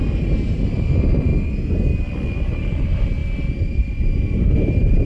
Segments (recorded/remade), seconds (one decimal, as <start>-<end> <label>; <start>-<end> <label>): 0.0-1.3 remade; 1.3-2.3 recorded; 2.3-3.2 remade; 3.2-3.7 recorded; 3.7-5.0 remade